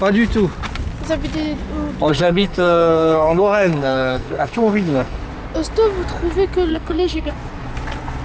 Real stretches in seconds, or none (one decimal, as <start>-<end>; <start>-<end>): 0.0-2.1; 5.2-6.7; 7.3-8.2